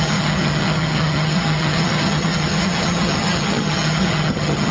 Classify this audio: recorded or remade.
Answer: remade